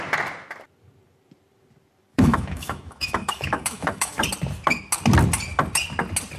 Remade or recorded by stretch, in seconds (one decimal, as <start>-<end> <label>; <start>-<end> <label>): 0.0-2.1 recorded; 2.1-4.2 remade; 4.2-6.4 recorded